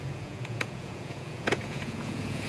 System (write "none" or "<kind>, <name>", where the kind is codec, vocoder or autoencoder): vocoder, Vocos